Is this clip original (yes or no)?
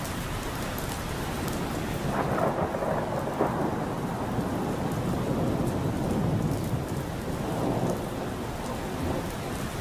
yes